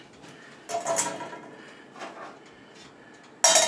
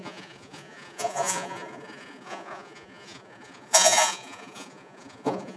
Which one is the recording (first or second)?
first